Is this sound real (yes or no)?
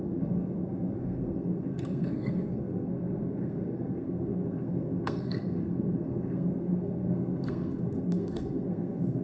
no